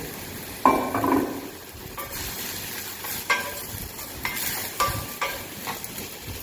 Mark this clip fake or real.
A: real